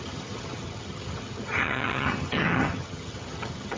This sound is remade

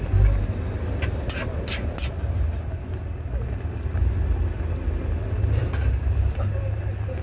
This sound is recorded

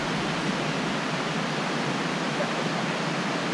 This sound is recorded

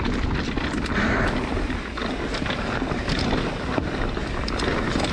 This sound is recorded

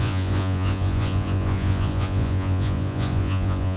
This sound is remade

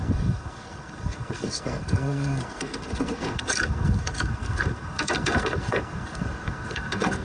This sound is remade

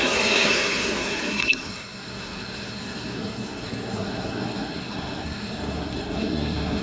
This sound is remade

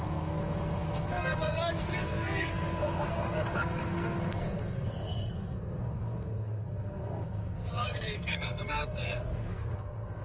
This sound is remade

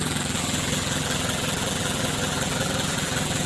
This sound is remade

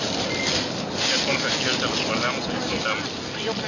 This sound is recorded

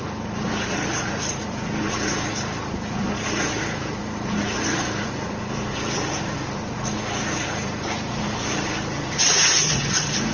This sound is remade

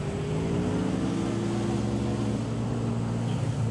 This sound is recorded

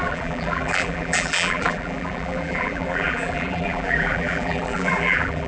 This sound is remade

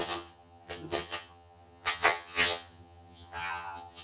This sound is remade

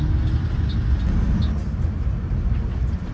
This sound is recorded